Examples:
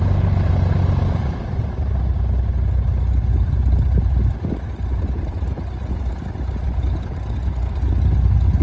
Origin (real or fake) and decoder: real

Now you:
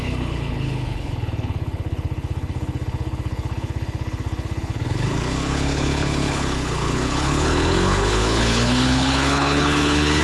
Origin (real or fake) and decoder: fake, codec, HILCodec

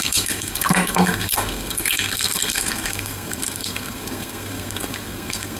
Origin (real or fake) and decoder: fake, codec, SNAC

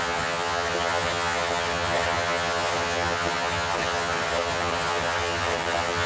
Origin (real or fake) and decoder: fake, vocoder, HiFi-GAN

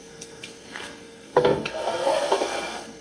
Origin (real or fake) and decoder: fake, codec, SNAC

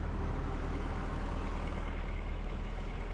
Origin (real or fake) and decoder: fake, autoencoder, DAC-VAE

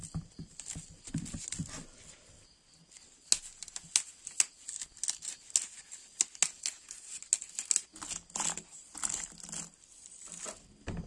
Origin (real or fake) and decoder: real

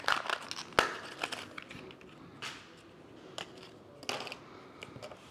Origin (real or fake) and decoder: real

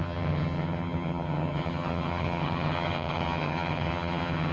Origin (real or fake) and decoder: fake, vocoder, HiFi-GAN